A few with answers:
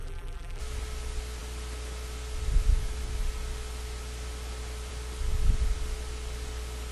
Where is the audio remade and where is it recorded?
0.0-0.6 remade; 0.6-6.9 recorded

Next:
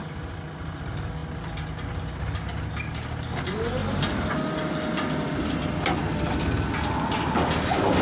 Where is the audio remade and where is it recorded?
0.0-8.0 recorded

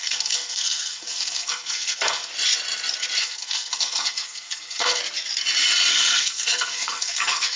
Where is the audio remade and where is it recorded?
0.0-2.3 remade; 2.3-3.2 recorded; 3.2-5.0 remade; 5.0-5.9 recorded; 5.9-7.6 remade

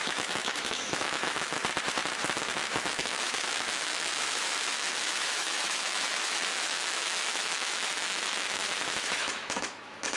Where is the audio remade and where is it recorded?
0.0-1.6 remade; 1.6-2.4 recorded; 2.4-10.2 remade

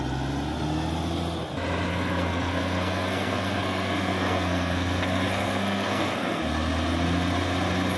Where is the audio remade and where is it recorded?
0.0-1.9 recorded; 1.9-6.4 remade; 6.4-8.0 recorded

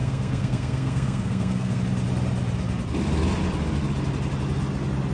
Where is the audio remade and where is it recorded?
0.0-1.8 remade; 1.8-5.1 recorded

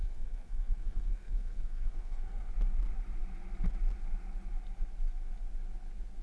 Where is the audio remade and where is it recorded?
0.0-2.5 remade; 2.5-6.2 recorded